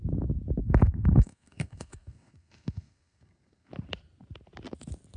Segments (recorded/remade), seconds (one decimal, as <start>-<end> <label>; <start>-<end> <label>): 0.0-0.6 recorded; 0.6-3.7 remade; 3.7-5.2 recorded